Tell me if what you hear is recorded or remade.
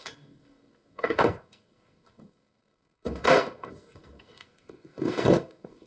remade